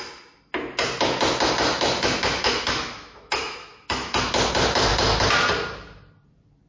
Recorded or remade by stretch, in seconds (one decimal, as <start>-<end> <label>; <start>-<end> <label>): 0.0-1.7 recorded; 1.7-4.3 remade; 4.3-6.7 recorded